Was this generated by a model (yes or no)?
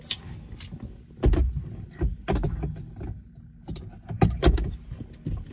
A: no